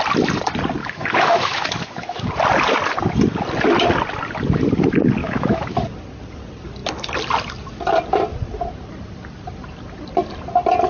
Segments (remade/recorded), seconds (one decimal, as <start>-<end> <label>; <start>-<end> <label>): 0.0-0.8 recorded; 0.8-2.3 remade; 2.3-5.2 recorded; 5.2-5.8 remade; 5.8-10.9 recorded